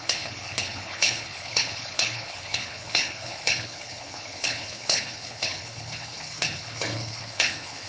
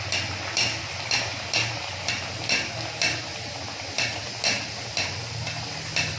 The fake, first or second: first